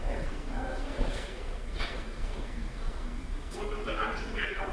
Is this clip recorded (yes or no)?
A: no